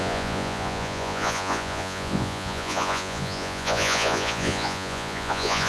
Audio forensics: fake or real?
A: fake